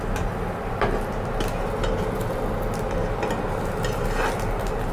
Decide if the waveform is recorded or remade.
recorded